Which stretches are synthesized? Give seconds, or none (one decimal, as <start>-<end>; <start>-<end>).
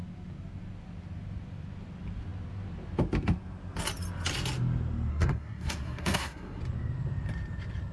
5.1-6.6